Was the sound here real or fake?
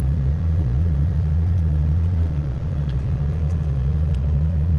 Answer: fake